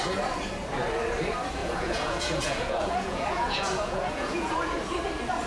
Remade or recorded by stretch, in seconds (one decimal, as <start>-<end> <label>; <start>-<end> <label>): 0.0-1.6 recorded; 1.6-4.5 remade; 4.5-5.5 recorded